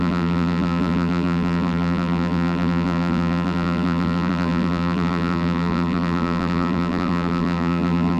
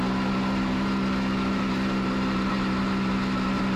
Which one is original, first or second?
second